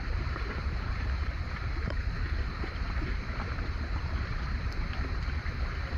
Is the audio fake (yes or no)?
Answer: yes